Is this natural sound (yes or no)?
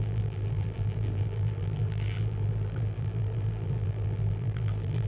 no